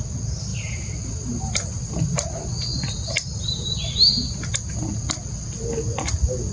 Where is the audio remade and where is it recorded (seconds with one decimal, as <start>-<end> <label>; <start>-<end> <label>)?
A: 0.0-0.5 recorded; 0.5-1.1 remade; 1.1-6.5 recorded